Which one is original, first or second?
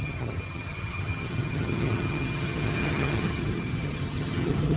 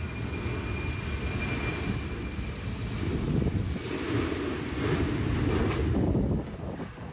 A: second